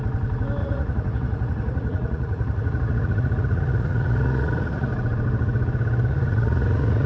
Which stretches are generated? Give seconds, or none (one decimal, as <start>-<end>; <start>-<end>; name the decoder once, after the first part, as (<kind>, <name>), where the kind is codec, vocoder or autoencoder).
0.6-4.9 (vocoder, Vocos); 6.1-7.1